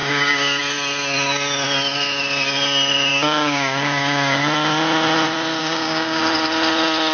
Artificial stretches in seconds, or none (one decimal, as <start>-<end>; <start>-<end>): 0.0-0.6; 3.1-4.4; 5.6-6.2